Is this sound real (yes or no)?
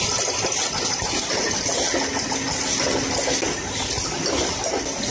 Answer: yes